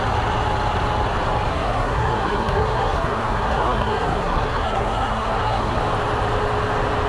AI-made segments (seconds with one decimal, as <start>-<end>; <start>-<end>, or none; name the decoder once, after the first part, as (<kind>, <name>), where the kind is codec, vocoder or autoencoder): 1.5-5.8 (codec, SNAC)